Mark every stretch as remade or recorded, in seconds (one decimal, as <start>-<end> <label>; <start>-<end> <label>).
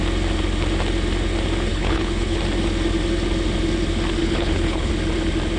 0.0-1.7 recorded; 1.7-2.4 remade; 2.4-4.2 recorded; 4.2-4.9 remade; 4.9-5.6 recorded